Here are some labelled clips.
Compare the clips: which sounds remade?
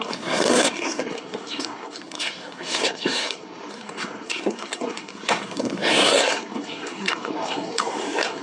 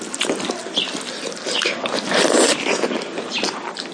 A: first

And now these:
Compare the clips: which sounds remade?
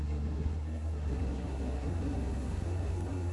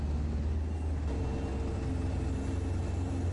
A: first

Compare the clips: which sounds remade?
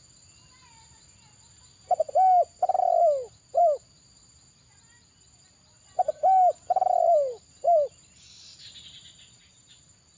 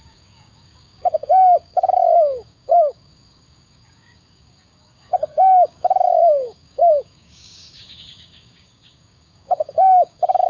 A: second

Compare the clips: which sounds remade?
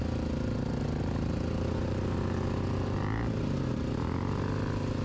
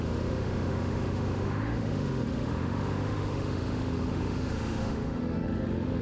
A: second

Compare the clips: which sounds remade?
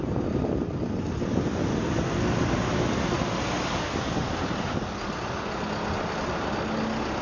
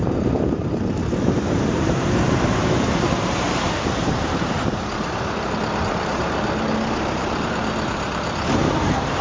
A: second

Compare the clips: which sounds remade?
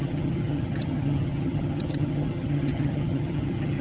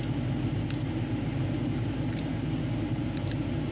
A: first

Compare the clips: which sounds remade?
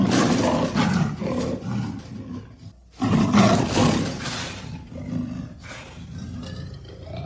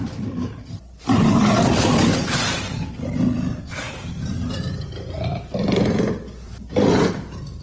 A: second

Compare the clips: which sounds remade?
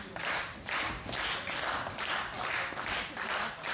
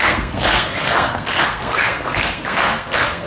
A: second